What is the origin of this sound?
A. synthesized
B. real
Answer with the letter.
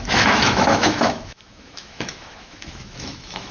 A